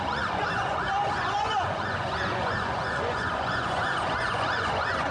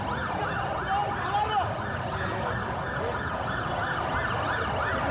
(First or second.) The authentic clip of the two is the second